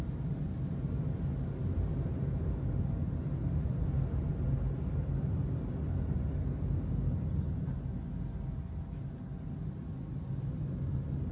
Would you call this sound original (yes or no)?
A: yes